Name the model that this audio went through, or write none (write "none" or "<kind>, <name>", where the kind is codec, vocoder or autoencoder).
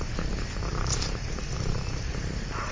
none